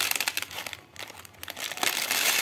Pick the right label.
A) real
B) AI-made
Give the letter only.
A